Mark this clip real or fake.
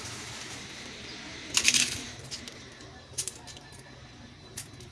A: fake